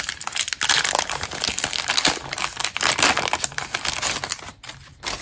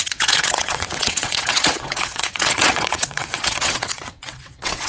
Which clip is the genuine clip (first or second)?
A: first